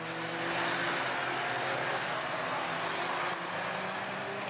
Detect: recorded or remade recorded